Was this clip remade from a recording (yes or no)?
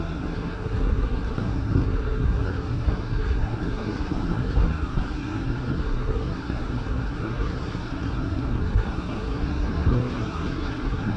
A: yes